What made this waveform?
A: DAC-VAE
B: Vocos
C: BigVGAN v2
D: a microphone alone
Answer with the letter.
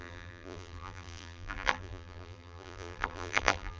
C